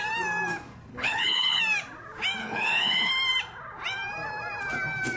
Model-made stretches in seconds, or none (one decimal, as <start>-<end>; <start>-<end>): 0.9-1.6; 2.4-3.1